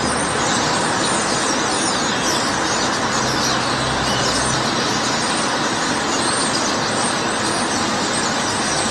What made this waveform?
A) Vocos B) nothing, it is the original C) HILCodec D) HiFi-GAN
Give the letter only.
B